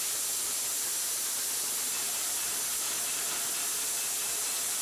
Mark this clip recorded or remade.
recorded